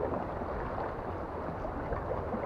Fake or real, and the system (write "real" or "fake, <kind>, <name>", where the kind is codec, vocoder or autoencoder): real